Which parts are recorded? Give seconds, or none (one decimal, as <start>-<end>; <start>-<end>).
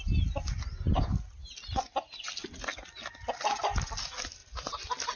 0.0-5.2